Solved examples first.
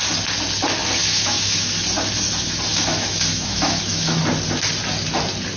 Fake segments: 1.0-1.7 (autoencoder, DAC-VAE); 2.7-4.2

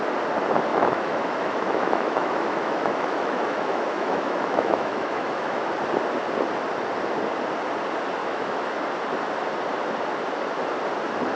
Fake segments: 0.7-5.7 (autoencoder, DAC-VAE); 8.2-8.8

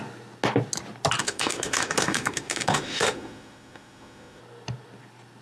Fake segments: 1.2-4.4 (autoencoder, DAC-VAE)